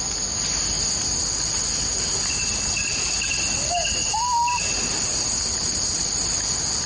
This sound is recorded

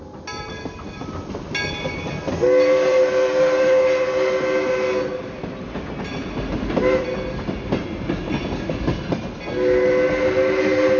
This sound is recorded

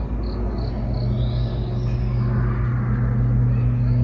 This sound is recorded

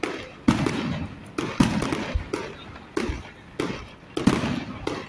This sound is recorded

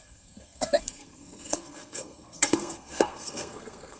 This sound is remade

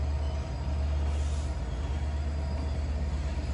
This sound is recorded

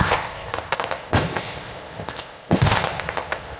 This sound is remade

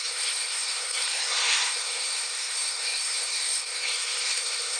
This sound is remade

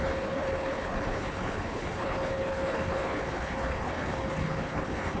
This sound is remade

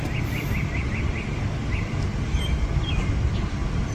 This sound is recorded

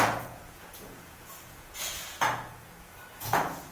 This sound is remade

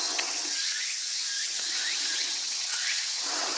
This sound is remade